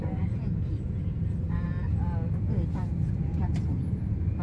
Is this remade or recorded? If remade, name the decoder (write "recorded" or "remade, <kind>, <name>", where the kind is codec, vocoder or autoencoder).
recorded